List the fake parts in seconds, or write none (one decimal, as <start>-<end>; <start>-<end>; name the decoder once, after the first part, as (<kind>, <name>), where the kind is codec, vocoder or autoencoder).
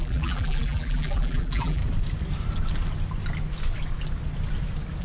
0.0-1.8 (vocoder, BigVGAN v2)